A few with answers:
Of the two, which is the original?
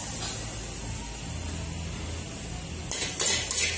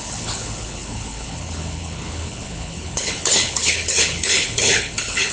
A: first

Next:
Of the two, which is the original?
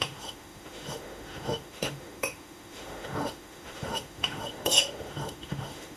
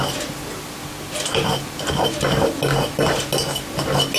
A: second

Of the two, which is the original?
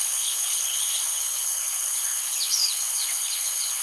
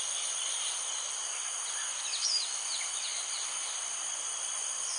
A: second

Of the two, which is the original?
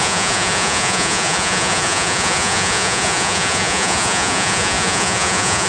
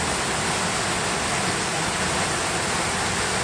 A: second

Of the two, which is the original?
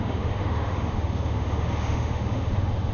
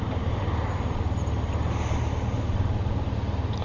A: second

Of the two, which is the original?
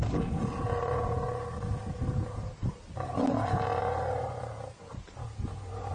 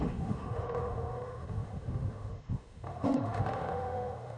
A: first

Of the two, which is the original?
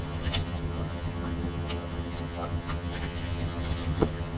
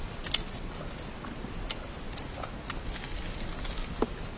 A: second